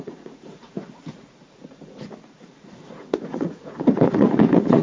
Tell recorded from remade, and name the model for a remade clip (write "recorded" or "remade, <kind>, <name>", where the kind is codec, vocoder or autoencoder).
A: remade, vocoder, Vocos